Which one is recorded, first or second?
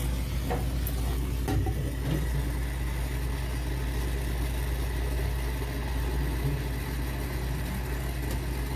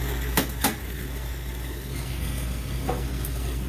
first